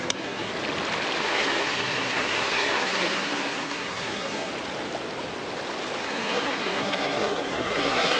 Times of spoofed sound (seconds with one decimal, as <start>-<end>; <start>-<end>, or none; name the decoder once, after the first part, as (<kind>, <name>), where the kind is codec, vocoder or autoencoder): 0.0-0.5 (codec, SNAC); 1.2-4.5; 6.0-8.2